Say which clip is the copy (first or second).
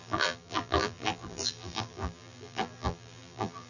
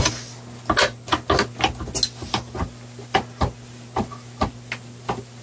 first